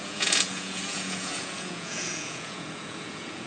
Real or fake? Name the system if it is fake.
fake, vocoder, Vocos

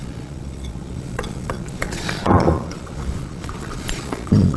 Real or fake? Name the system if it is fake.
fake, vocoder, Vocos